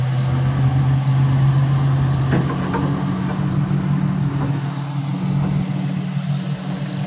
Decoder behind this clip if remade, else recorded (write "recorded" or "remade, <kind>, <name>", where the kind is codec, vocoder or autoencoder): recorded